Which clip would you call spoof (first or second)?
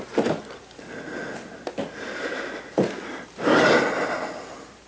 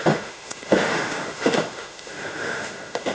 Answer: second